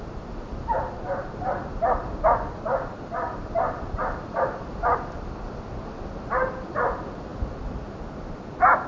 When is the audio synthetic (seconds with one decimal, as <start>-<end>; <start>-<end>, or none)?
none

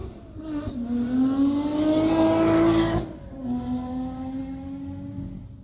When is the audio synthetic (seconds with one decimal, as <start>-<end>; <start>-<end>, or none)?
none